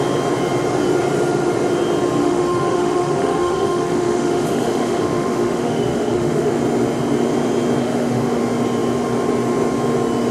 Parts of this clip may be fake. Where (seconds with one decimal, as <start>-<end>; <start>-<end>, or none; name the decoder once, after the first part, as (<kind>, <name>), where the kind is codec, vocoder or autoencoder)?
2.2-6.5 (autoencoder, DAC-VAE); 7.8-8.4